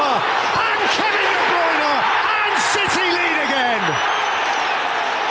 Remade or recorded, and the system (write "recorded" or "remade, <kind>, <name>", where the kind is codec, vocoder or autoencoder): recorded